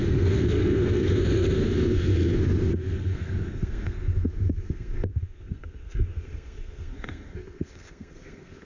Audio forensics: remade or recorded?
remade